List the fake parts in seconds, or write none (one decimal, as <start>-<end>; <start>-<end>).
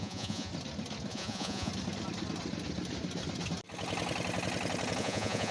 0.0-0.5; 1.1-1.7; 5.0-5.5